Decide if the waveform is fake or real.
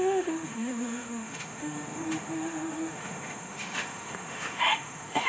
fake